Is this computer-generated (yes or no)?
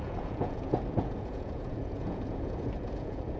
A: yes